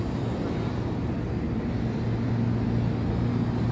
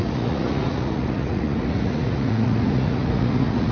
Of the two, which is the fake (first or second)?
second